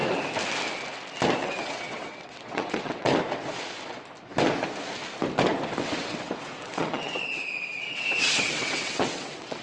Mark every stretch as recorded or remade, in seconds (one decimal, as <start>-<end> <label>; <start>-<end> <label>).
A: 0.0-1.4 recorded; 1.4-3.1 remade; 3.1-5.8 recorded; 5.8-9.6 remade